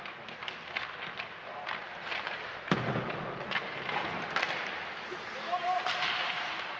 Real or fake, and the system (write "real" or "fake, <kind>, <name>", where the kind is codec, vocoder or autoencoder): real